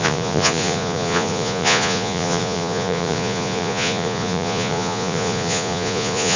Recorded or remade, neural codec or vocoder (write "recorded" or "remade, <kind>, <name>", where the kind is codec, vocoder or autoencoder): remade, vocoder, Vocos